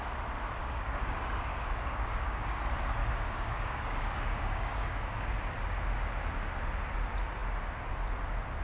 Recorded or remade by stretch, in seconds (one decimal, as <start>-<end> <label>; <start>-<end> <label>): 0.0-0.6 recorded; 0.6-2.6 remade; 2.6-3.0 recorded; 3.0-5.3 remade; 5.3-8.6 recorded